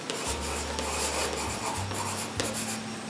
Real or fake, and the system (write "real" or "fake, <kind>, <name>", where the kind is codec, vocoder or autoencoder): real